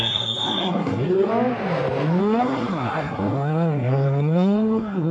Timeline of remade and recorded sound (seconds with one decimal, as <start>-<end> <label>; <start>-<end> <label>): 0.0-1.3 remade; 1.3-2.2 recorded; 2.2-5.1 remade

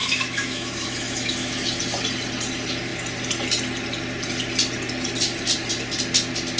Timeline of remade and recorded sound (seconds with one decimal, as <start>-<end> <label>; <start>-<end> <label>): 0.0-1.8 remade; 1.8-6.6 recorded

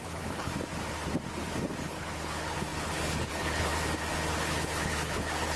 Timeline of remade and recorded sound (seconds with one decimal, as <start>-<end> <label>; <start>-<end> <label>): 0.0-0.5 remade; 0.5-1.8 recorded; 1.8-3.7 remade; 3.7-4.4 recorded; 4.4-5.6 remade

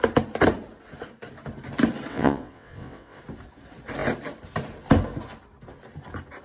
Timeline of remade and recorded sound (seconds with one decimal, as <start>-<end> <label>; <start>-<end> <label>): 0.0-2.1 recorded; 2.1-3.2 remade; 3.2-6.4 recorded